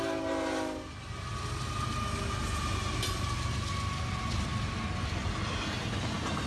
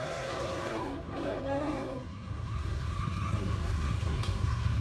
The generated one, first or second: second